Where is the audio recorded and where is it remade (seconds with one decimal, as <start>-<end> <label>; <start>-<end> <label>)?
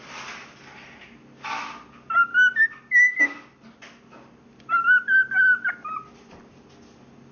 0.0-7.3 recorded